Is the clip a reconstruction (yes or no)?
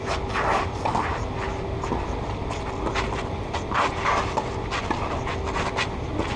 no